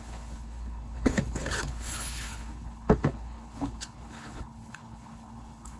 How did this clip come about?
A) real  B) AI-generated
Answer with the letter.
B